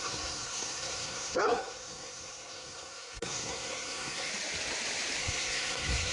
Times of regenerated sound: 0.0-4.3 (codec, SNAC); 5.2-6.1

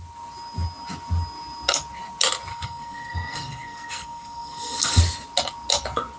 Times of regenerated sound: 2.5-5.0 (codec, SNAC)

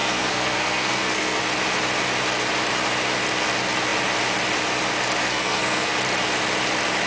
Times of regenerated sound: 0.0-1.4 (codec, SNAC); 5.2-5.9

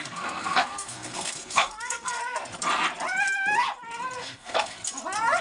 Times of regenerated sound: 0.0-2.2 (codec, SNAC); 4.2-4.8

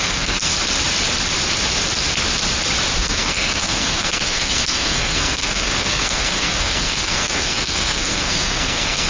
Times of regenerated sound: 0.0-0.5 (codec, SNAC); 3.0-9.1

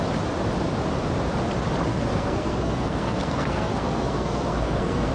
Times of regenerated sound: 1.9-5.1 (codec, SNAC)

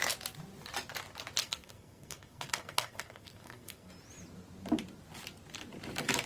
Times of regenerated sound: 1.4-3.9 (codec, SNAC)